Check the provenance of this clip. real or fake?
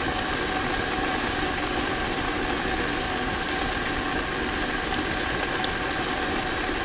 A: real